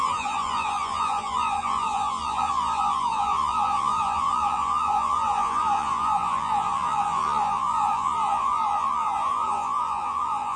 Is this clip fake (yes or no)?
yes